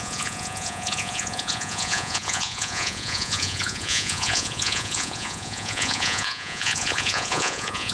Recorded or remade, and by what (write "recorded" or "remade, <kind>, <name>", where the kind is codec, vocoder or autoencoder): remade, vocoder, Vocos